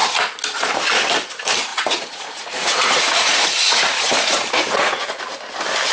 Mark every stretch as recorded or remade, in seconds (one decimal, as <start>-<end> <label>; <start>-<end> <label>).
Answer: 0.0-1.7 recorded; 1.7-5.2 remade; 5.2-5.9 recorded